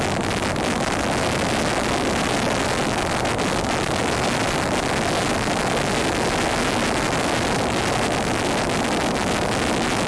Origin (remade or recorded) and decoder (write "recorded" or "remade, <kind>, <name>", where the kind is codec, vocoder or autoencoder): recorded